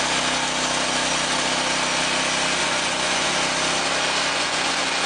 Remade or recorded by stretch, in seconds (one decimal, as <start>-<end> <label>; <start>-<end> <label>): 0.0-2.6 recorded; 2.6-3.3 remade; 3.3-4.3 recorded; 4.3-5.1 remade